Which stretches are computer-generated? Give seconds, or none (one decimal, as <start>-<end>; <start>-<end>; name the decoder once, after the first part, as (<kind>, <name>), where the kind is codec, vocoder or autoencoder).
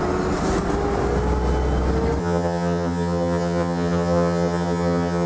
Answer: 2.2-5.3 (vocoder, HiFi-GAN)